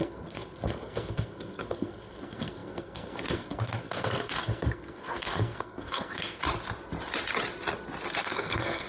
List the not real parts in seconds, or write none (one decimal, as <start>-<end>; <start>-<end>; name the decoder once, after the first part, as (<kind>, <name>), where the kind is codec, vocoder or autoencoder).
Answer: 0.0-6.4 (codec, SNAC); 8.2-8.9